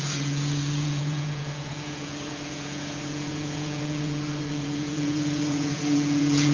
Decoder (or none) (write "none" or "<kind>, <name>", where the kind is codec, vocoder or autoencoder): vocoder, Vocos